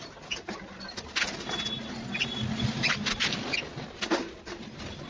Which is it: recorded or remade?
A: recorded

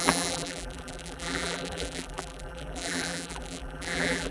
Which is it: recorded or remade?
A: remade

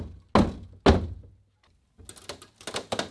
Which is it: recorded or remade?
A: recorded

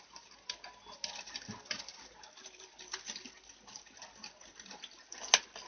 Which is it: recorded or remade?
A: recorded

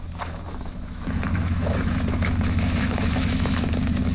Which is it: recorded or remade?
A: remade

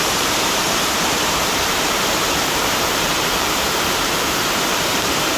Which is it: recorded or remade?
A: remade